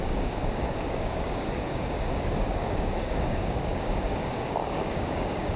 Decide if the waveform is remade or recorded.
remade